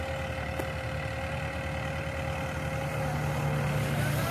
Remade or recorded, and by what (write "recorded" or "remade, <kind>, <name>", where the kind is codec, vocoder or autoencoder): recorded